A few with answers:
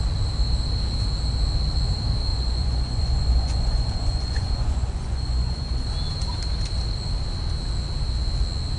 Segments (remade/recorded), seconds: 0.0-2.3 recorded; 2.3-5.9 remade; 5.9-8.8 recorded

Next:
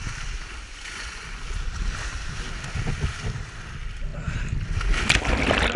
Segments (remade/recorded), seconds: 0.0-0.7 recorded; 0.7-1.4 remade; 1.4-5.8 recorded